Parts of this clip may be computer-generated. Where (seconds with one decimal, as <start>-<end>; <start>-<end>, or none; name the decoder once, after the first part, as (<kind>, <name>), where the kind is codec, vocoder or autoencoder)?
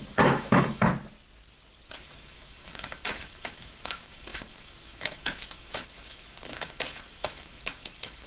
0.0-0.9 (autoencoder, DAC-VAE); 2.0-8.3